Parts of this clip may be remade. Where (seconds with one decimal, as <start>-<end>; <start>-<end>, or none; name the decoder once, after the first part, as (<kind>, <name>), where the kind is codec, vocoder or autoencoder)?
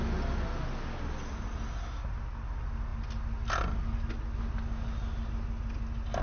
none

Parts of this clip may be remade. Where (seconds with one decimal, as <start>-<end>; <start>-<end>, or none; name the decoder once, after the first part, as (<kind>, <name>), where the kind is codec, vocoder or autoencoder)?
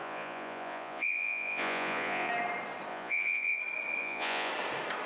0.0-2.3 (vocoder, Vocos); 2.9-3.6; 4.0-4.5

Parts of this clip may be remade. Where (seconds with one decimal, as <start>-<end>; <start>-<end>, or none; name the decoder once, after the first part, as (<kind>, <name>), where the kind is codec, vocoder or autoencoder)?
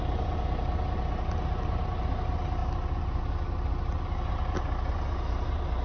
none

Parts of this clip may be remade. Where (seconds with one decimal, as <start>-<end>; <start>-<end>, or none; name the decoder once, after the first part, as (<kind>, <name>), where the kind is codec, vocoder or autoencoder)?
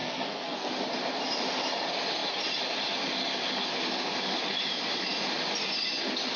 0.0-0.7 (codec, SNAC)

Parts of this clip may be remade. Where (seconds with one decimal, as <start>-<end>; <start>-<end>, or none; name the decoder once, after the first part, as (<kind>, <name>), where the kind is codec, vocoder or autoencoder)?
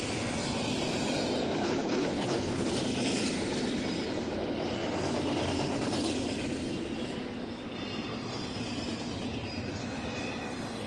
1.6-2.7 (codec, HILCodec)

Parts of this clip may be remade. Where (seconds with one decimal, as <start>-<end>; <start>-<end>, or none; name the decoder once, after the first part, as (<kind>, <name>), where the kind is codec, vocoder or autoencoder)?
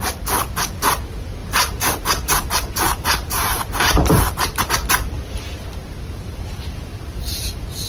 1.4-4.6 (vocoder, BigVGAN v2); 5.8-6.5; 6.9-7.9